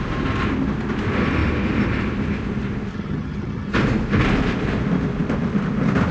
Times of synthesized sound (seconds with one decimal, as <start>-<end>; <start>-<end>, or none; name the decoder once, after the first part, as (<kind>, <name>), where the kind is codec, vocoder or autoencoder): 2.9-3.7 (vocoder, HiFi-GAN)